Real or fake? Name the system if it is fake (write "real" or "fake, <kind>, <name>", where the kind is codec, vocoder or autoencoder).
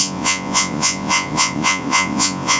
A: fake, vocoder, Vocos